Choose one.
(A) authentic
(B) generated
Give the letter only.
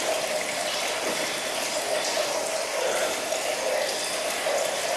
A